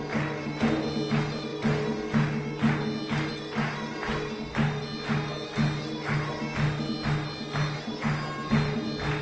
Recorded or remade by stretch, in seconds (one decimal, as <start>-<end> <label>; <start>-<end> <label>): 0.0-9.2 recorded